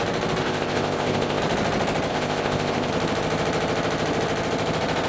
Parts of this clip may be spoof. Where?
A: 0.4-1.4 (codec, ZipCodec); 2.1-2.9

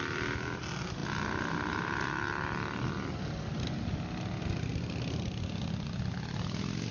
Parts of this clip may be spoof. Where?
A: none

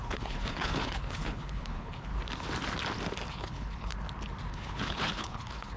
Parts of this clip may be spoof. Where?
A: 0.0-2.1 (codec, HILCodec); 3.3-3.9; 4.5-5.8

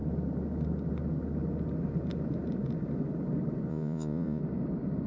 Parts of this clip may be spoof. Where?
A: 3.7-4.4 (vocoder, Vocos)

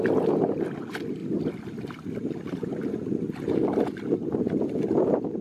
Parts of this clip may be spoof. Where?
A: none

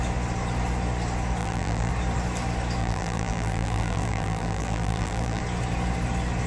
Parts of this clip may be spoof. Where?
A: 1.4-1.9 (vocoder, BigVGAN v2); 2.8-5.4

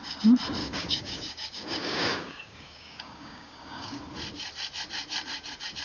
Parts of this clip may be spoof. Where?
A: 0.6-4.0 (codec, DAC)